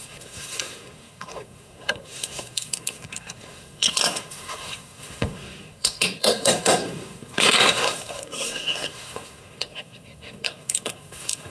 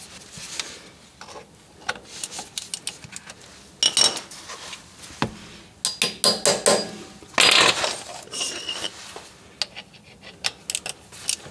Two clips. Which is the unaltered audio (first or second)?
second